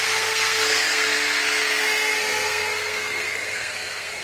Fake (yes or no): yes